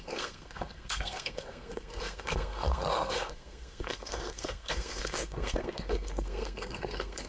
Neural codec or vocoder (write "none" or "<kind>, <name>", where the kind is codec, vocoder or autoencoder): codec, SNAC